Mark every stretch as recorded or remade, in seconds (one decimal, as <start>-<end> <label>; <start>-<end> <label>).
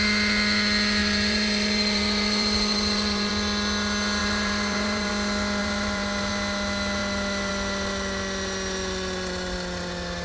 0.0-1.0 recorded; 1.0-3.3 remade; 3.3-4.2 recorded; 4.2-5.1 remade; 5.1-5.6 recorded; 5.6-6.3 remade; 6.3-10.2 recorded